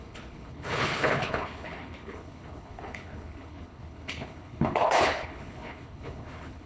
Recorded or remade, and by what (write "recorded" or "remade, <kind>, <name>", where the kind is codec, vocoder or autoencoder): remade, codec, HILCodec